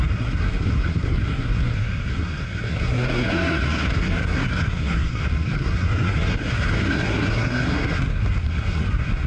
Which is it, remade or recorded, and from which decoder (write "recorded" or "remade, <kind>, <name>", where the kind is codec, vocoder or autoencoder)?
remade, codec, SNAC